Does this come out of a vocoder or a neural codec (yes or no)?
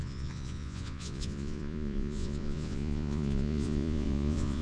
yes